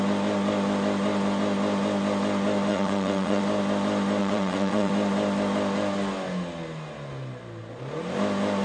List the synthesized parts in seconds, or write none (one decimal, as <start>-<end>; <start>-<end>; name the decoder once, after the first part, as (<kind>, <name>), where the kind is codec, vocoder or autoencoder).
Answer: 2.7-3.4 (vocoder, Vocos); 4.2-4.9